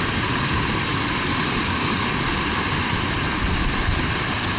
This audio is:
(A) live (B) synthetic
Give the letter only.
B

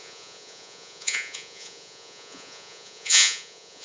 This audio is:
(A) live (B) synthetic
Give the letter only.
B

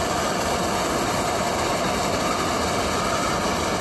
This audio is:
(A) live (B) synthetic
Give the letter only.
A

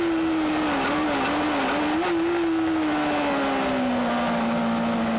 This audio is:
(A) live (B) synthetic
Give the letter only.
A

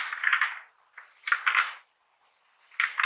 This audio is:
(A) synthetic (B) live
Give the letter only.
B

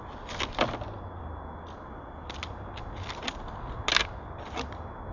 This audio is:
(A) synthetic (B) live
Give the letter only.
B